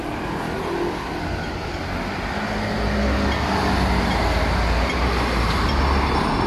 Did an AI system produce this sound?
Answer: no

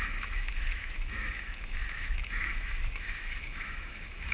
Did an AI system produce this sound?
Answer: yes